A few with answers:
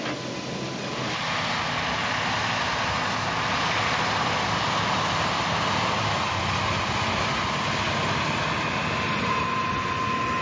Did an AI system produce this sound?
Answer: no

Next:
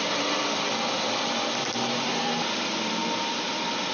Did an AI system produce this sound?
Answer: no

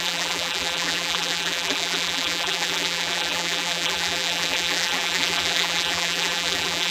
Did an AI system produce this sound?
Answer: yes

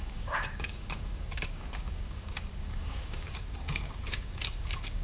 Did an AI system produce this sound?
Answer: yes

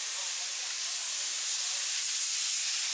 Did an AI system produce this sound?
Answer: no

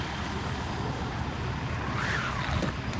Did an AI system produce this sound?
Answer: no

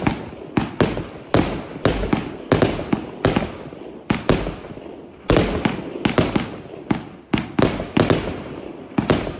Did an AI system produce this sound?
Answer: no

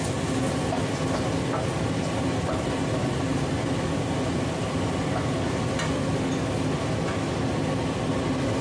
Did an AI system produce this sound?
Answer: no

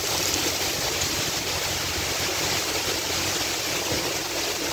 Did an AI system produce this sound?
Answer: yes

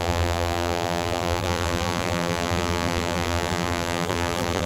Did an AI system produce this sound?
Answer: yes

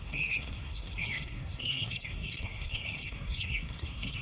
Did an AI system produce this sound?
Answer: yes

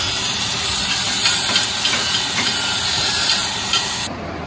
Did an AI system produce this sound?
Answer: yes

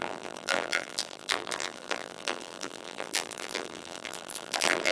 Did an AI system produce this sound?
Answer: yes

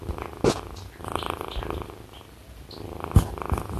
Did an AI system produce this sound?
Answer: no